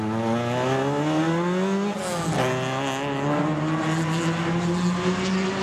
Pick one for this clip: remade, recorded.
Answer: recorded